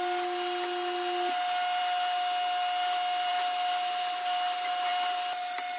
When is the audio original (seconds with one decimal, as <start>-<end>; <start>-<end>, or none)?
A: 0.0-5.8